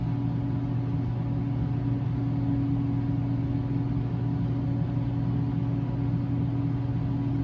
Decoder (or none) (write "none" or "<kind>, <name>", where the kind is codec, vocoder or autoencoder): none